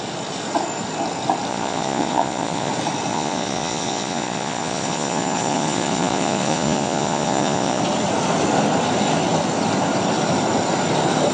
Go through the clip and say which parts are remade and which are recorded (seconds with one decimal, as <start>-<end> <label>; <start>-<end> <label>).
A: 0.0-1.5 recorded; 1.5-2.7 remade; 2.7-3.1 recorded; 3.1-7.8 remade; 7.8-11.3 recorded

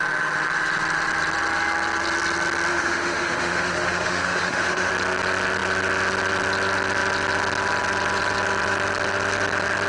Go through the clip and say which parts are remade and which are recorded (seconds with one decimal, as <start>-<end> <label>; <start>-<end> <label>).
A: 0.0-2.7 recorded; 2.7-4.9 remade; 4.9-9.9 recorded